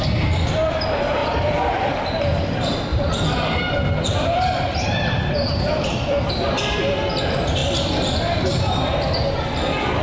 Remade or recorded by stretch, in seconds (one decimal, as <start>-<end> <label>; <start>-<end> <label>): 0.0-1.2 recorded; 1.2-1.9 remade; 1.9-2.9 recorded; 2.9-6.3 remade; 6.3-10.0 recorded